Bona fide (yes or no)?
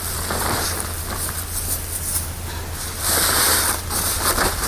yes